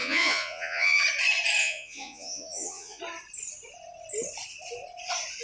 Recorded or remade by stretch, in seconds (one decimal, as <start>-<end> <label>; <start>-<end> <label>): 0.0-1.0 remade; 1.0-1.6 recorded; 1.6-3.0 remade; 3.0-5.4 recorded

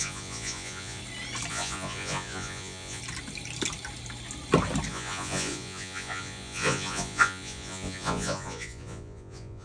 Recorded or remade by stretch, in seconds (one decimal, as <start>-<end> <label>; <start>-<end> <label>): 0.0-1.0 remade; 1.0-1.5 recorded; 1.5-3.0 remade; 3.0-4.9 recorded; 4.9-9.6 remade

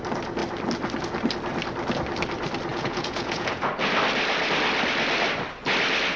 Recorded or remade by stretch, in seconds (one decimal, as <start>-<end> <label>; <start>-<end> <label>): 0.0-2.7 recorded; 2.7-3.7 remade; 3.7-6.2 recorded

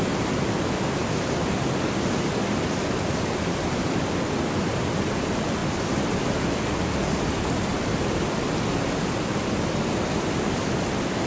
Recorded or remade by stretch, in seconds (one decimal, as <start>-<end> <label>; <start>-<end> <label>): 0.0-11.3 recorded